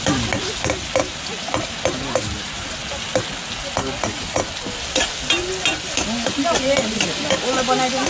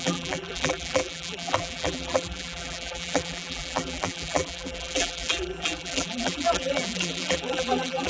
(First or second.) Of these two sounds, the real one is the first